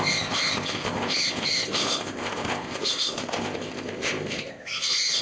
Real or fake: fake